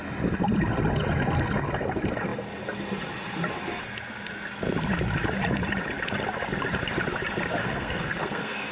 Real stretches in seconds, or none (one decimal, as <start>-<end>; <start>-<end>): 0.0-7.6